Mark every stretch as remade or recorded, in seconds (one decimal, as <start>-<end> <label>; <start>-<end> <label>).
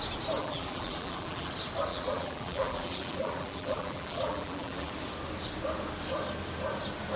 0.0-0.4 recorded; 0.4-1.5 remade; 1.5-1.9 recorded; 1.9-4.9 remade; 4.9-7.2 recorded